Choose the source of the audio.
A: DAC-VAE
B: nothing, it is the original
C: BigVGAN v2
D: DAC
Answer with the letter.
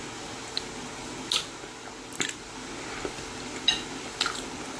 B